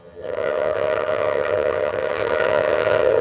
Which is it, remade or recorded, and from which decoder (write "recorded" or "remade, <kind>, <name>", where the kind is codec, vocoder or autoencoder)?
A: remade, vocoder, HiFi-GAN